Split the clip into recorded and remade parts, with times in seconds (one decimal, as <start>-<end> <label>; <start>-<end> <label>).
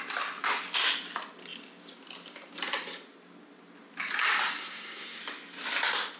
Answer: 0.0-4.6 recorded; 4.6-5.2 remade; 5.2-6.2 recorded